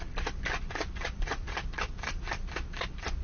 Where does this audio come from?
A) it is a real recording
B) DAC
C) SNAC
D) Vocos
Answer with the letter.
A